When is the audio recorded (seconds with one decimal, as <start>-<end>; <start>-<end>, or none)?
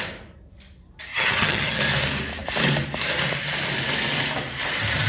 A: 0.0-1.1; 1.8-5.1